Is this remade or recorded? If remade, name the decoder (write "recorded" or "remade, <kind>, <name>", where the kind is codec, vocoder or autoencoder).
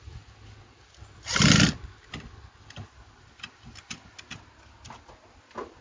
recorded